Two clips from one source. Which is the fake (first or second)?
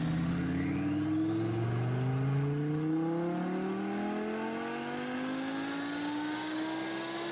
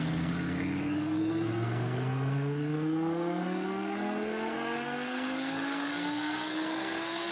second